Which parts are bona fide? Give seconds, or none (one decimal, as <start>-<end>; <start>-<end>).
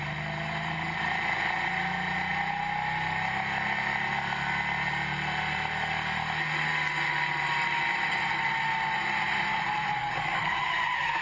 0.0-10.0; 10.6-11.2